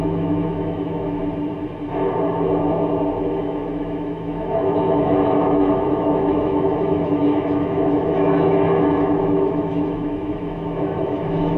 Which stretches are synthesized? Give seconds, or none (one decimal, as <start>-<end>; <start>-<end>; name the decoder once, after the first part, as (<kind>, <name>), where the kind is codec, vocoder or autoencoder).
0.0-1.2 (autoencoder, DAC-VAE); 3.4-11.6